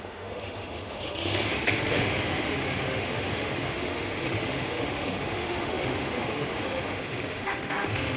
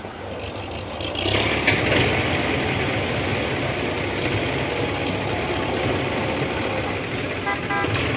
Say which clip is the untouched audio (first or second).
second